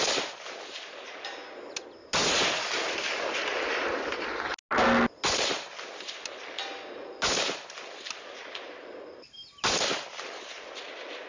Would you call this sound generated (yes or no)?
no